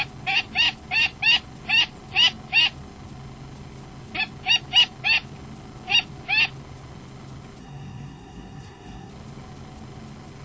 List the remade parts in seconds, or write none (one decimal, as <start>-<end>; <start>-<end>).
7.6-9.1

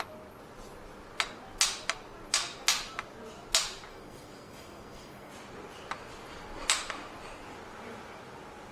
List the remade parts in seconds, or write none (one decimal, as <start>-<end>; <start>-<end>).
3.9-5.3

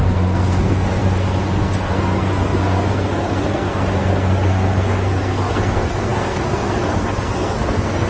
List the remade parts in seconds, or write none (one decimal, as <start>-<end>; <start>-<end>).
0.0-8.1